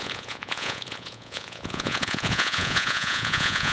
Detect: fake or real fake